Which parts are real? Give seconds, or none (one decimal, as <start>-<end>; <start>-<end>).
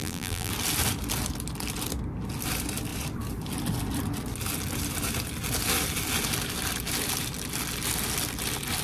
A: 0.5-8.8